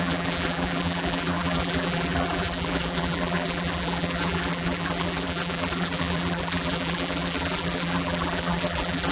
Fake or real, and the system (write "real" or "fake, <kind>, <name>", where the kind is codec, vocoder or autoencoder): fake, vocoder, BigVGAN v2